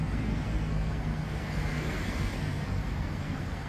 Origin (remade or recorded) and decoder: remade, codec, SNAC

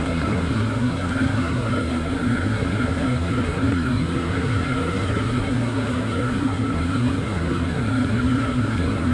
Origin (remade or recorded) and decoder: remade, codec, SNAC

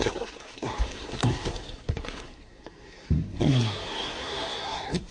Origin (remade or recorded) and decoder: remade, codec, SNAC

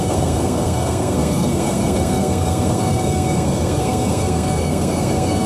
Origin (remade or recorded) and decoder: remade, codec, SNAC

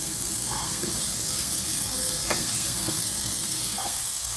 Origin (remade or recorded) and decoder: remade, codec, SNAC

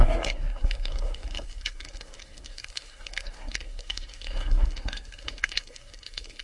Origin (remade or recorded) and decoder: remade, codec, SNAC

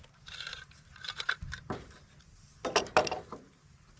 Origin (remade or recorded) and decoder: recorded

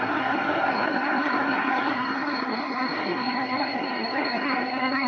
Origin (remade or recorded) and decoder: remade, codec, SNAC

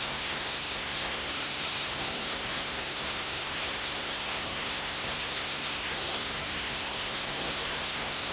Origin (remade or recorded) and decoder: remade, codec, SNAC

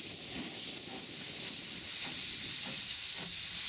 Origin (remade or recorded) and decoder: recorded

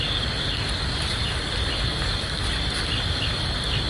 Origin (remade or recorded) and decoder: recorded